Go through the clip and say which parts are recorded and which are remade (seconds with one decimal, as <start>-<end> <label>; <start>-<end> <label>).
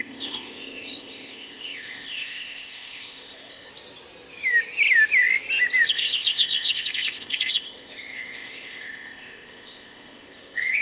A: 0.0-3.7 remade; 3.7-5.9 recorded; 5.9-10.8 remade